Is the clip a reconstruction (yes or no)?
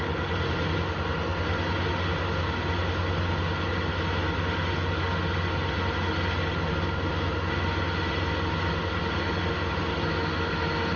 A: no